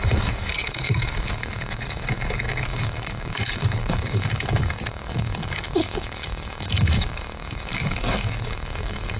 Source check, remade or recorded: remade